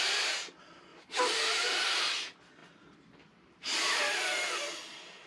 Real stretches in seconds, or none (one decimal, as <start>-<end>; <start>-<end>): 0.0-0.9; 1.7-2.6; 4.0-5.3